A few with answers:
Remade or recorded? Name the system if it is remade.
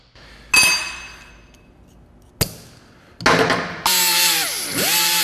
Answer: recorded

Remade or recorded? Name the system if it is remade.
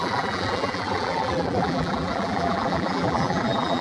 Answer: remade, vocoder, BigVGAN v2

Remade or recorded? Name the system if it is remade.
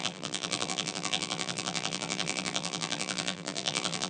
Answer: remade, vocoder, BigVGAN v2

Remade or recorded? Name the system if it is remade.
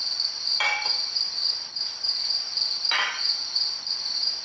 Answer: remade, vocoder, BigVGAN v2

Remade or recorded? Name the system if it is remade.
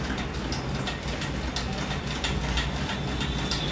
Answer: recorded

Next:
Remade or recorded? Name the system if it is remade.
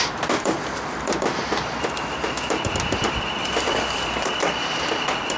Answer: remade, vocoder, BigVGAN v2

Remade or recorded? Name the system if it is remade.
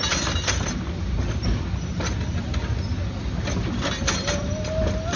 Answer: recorded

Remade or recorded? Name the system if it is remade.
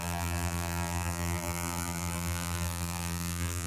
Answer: remade, vocoder, BigVGAN v2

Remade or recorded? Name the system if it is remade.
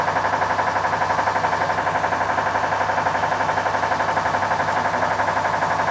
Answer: recorded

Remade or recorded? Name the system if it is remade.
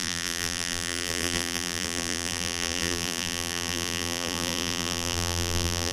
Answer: remade, vocoder, BigVGAN v2